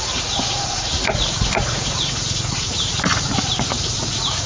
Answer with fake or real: fake